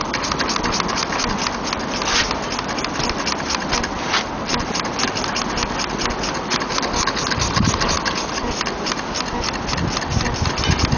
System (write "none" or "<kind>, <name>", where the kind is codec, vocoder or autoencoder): none